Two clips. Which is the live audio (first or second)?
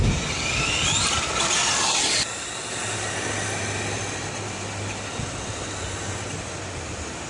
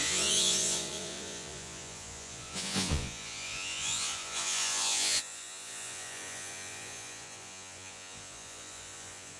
first